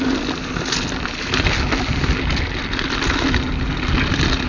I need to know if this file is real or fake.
real